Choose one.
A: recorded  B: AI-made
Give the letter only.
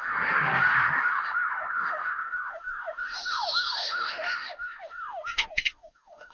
B